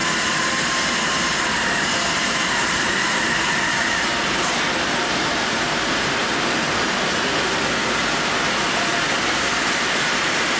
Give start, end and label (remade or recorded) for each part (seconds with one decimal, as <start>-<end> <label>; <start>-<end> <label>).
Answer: 0.0-2.6 recorded; 2.6-7.0 remade; 7.0-10.6 recorded